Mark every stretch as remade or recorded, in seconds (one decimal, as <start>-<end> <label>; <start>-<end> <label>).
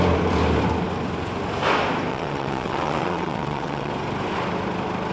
0.0-2.1 recorded; 2.1-3.9 remade; 3.9-5.1 recorded